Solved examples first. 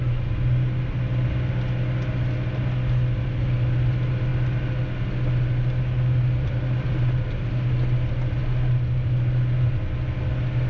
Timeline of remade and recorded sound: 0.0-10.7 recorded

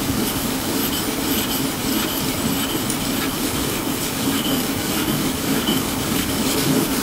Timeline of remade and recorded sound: 0.0-0.8 remade; 0.8-3.3 recorded; 3.3-7.0 remade